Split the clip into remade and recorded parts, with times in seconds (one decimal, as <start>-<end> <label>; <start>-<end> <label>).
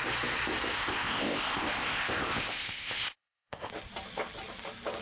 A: 0.0-0.7 recorded; 0.7-3.7 remade; 3.7-5.0 recorded